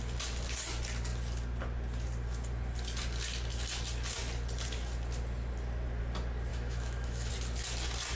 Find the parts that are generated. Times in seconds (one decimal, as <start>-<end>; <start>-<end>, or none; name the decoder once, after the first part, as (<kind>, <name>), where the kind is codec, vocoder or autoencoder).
6.5-7.3 (autoencoder, DAC-VAE)